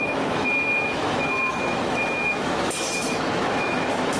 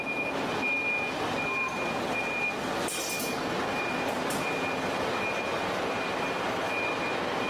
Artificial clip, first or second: first